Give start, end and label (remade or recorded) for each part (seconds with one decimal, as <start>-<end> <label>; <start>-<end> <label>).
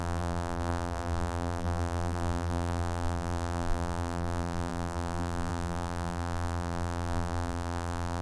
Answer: 0.0-8.2 remade